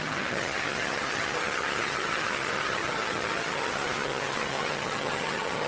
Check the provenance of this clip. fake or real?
fake